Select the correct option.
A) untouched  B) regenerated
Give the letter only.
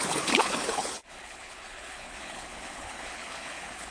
B